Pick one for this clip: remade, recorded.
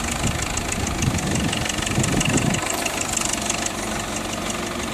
recorded